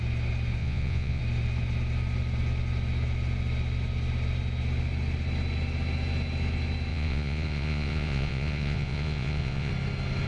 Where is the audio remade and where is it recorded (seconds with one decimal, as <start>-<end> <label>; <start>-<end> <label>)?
0.0-0.6 recorded; 0.6-1.2 remade; 1.2-6.9 recorded; 6.9-9.7 remade; 9.7-10.3 recorded